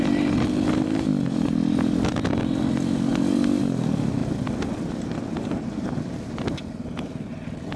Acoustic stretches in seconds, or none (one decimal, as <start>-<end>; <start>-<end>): 0.0-3.1; 3.6-4.2; 7.3-7.8

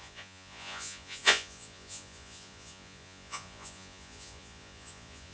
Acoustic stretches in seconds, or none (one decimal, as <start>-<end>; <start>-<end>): none

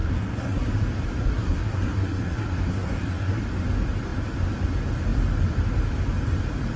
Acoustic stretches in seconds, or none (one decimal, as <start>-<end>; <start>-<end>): 0.7-1.2; 3.4-6.8

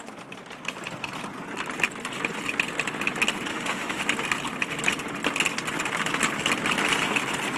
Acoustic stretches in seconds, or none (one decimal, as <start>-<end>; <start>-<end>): 0.0-3.5; 4.0-7.6

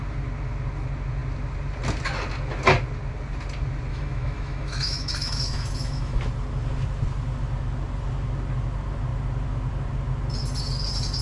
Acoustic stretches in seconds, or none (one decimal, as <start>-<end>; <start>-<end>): 0.0-3.9; 6.2-11.2

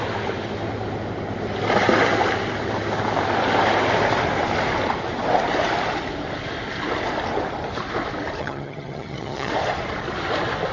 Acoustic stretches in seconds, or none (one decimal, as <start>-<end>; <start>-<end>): 0.0-8.4; 9.5-10.7